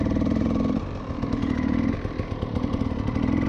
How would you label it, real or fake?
fake